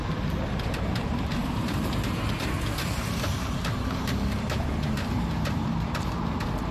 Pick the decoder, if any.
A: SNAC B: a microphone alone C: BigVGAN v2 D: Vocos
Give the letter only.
C